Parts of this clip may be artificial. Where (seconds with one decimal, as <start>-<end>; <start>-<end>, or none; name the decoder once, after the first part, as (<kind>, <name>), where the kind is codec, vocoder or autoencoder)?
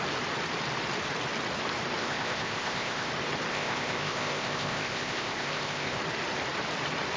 2.0-3.1 (codec, ZipCodec); 3.5-6.0